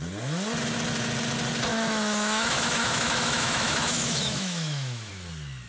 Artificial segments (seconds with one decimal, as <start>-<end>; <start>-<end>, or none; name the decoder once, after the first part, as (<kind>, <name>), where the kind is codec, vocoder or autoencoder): 1.7-5.1 (autoencoder, DAC-VAE)